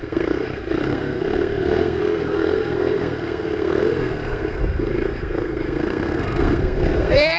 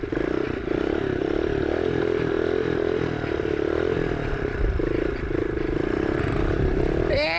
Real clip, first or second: second